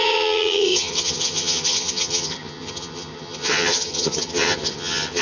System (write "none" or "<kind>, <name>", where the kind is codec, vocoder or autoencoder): vocoder, HiFi-GAN